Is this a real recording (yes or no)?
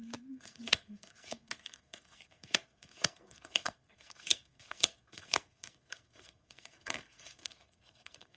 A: no